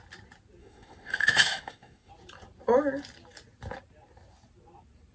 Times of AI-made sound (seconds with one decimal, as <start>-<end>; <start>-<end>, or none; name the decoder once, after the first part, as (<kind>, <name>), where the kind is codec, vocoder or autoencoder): 0.6-2.1 (autoencoder, DAC-VAE)